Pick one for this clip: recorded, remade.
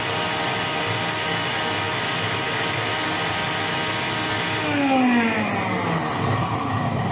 recorded